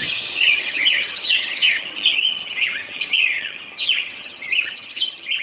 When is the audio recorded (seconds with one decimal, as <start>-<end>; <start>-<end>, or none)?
none